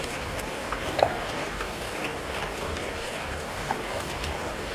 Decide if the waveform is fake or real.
fake